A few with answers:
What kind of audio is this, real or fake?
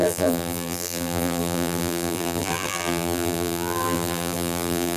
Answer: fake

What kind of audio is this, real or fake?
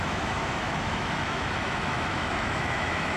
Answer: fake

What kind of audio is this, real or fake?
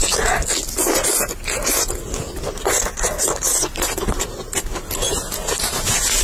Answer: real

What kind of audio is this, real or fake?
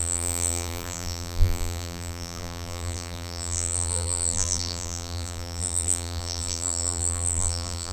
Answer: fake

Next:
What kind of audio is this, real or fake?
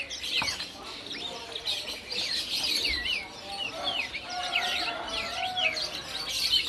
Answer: real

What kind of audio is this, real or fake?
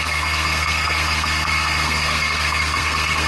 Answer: fake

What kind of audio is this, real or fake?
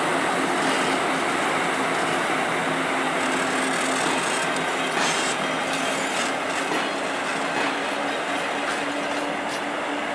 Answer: real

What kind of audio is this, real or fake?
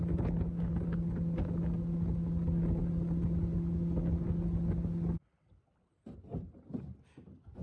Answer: real